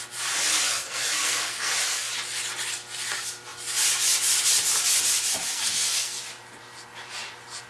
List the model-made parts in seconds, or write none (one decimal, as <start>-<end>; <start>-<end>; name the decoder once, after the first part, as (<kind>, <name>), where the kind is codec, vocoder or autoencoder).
0.5-2.1 (codec, SNAC); 5.5-6.2